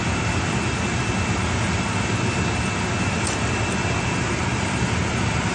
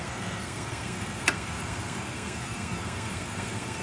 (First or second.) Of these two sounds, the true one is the first